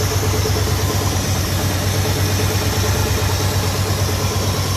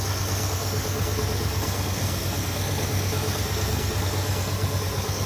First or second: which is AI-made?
second